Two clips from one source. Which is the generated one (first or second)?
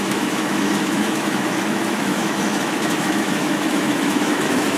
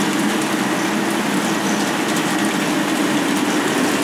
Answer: first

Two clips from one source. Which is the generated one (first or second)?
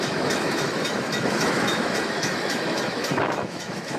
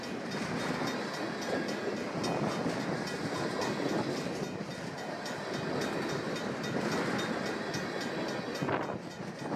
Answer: first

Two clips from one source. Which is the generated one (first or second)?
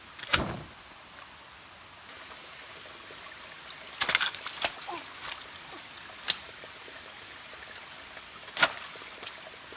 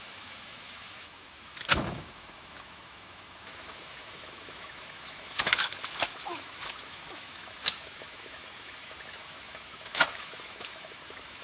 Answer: second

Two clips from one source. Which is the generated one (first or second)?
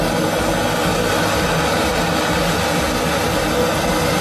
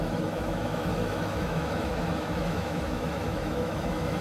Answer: second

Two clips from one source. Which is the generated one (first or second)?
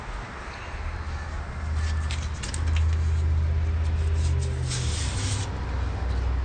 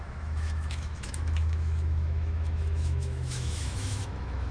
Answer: second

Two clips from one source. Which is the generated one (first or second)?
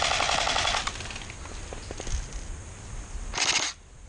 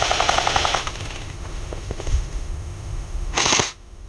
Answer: second